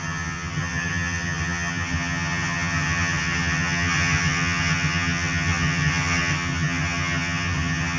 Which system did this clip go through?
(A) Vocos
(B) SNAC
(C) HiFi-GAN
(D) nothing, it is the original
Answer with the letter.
C